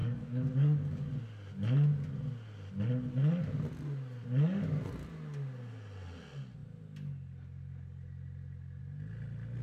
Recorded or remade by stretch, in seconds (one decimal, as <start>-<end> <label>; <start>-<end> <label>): 0.0-1.1 remade; 1.1-9.6 recorded